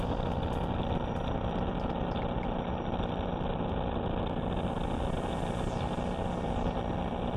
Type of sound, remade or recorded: recorded